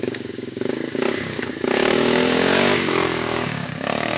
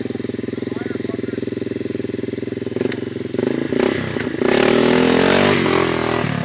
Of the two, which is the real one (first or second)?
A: second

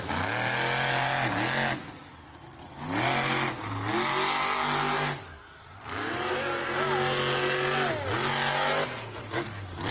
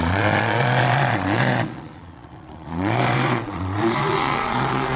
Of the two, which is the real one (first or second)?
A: first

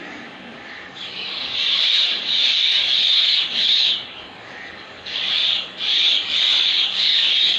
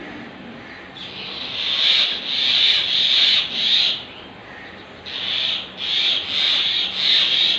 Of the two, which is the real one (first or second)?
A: second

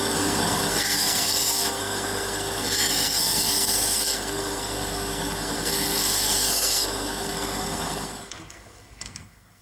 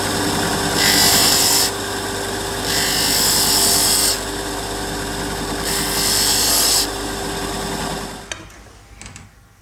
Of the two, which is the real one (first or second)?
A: second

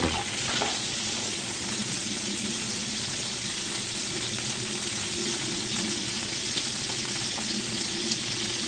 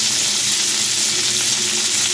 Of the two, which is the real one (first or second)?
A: second